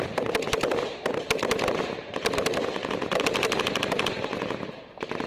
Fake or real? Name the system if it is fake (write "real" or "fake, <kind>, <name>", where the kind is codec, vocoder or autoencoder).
real